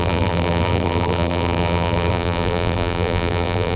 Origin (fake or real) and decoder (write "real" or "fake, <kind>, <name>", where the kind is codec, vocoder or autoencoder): fake, vocoder, BigVGAN v2